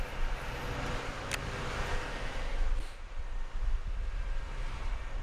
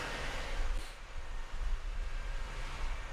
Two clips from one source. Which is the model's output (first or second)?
first